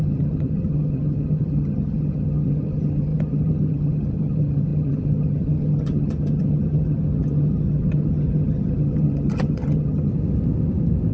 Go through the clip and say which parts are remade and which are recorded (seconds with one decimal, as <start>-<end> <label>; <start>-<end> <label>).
0.0-10.1 remade; 10.1-11.1 recorded